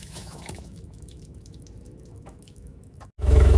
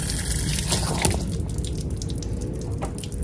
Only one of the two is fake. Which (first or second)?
first